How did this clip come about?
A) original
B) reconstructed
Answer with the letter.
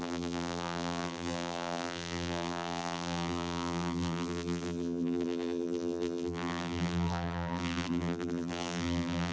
B